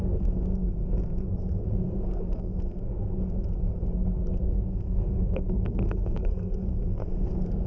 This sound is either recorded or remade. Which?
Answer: remade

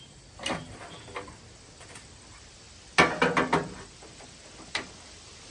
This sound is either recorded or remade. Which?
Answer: recorded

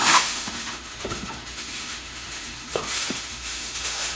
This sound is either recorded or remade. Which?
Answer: remade